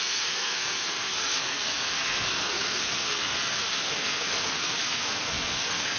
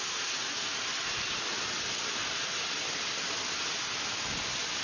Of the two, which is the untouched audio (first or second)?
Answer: second